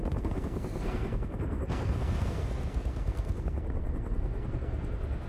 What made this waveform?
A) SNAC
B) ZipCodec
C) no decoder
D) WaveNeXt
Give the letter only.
A